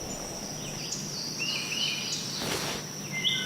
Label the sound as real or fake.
real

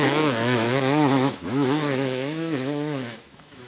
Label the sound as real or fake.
fake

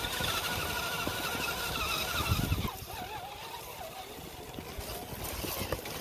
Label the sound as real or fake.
real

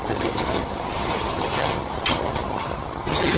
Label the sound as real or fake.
fake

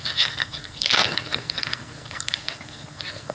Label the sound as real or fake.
fake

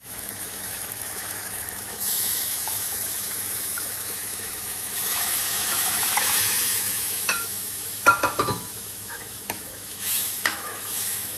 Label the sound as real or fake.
fake